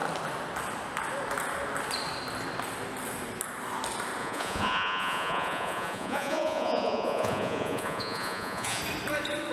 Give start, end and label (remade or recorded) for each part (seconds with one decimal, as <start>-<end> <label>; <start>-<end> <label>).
0.0-4.2 recorded; 4.2-8.8 remade; 8.8-9.5 recorded